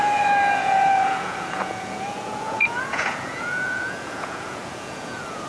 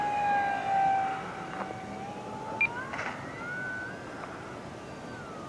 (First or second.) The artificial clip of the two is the first